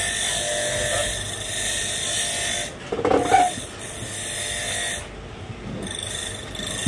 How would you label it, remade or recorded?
recorded